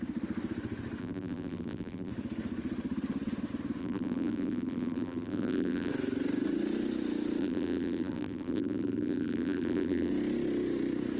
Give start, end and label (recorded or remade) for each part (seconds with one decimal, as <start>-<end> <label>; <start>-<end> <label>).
0.0-1.0 recorded; 1.0-2.1 remade; 2.1-3.8 recorded; 3.8-5.9 remade; 5.9-7.4 recorded; 7.4-10.1 remade; 10.1-11.2 recorded